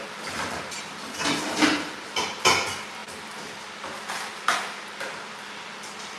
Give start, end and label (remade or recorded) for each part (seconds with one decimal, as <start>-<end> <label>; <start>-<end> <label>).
0.0-6.2 recorded